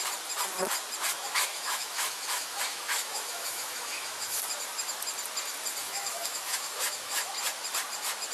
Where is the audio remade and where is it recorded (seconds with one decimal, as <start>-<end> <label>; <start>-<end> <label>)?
0.0-1.1 recorded; 1.1-4.4 remade; 4.4-5.8 recorded; 5.8-7.3 remade; 7.3-8.3 recorded